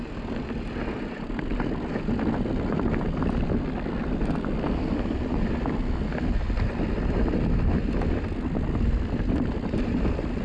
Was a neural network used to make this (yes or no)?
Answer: no